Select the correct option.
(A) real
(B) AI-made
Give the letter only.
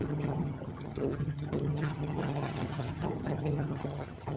B